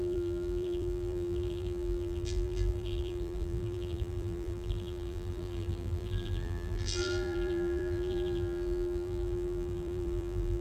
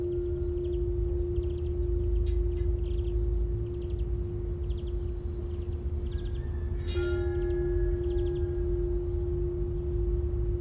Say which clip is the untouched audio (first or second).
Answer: second